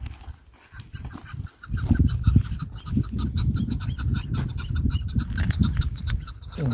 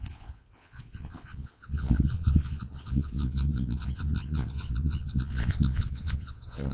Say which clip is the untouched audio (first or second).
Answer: first